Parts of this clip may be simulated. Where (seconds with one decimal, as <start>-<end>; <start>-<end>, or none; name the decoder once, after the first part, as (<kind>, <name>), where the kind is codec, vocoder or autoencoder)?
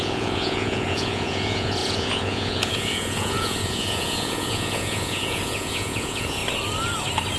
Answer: 0.0-6.4 (vocoder, Vocos)